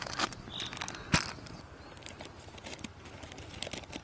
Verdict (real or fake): real